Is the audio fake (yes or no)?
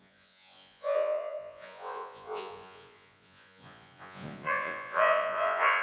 yes